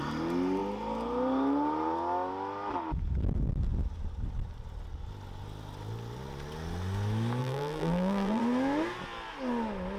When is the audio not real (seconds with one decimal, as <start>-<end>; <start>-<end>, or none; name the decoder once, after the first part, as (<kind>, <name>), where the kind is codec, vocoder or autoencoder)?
7.4-8.4 (vocoder, BigVGAN v2)